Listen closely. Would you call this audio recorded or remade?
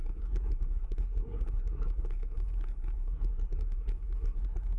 remade